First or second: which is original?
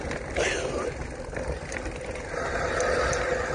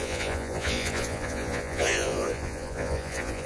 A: first